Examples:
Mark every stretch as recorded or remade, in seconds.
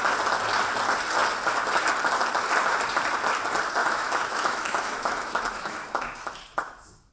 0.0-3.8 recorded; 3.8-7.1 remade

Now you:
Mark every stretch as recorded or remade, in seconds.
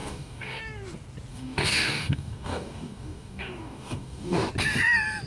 0.0-0.6 remade; 0.6-1.3 recorded; 1.3-4.5 remade; 4.5-5.3 recorded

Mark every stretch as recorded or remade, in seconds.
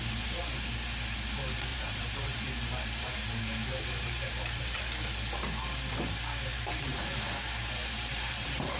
0.0-1.7 recorded; 1.7-4.8 remade; 4.8-6.5 recorded; 6.5-7.0 remade; 7.0-7.8 recorded; 7.8-8.8 remade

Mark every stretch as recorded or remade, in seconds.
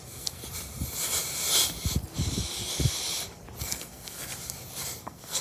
0.0-0.4 remade; 0.4-3.6 recorded; 3.6-4.3 remade; 4.3-5.0 recorded; 5.0-5.4 remade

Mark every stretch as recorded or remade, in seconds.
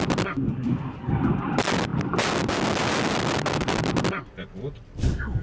0.0-1.9 remade; 1.9-5.4 recorded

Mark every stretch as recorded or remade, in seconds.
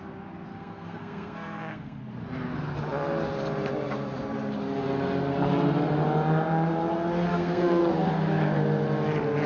0.0-0.5 recorded; 0.5-2.0 remade; 2.0-7.3 recorded; 7.3-7.8 remade; 7.8-9.5 recorded